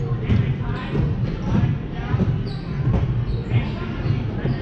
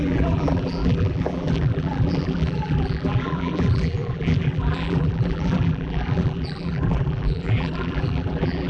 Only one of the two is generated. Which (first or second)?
second